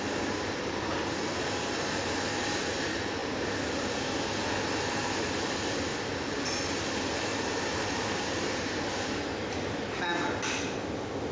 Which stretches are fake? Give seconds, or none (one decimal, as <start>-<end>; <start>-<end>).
none